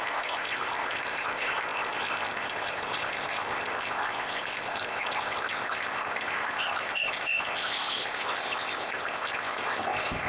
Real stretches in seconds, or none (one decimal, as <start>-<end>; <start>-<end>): none